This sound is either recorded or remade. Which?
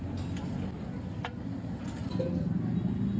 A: recorded